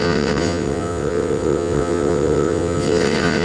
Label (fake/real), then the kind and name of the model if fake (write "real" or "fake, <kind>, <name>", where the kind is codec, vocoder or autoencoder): fake, vocoder, WaveNeXt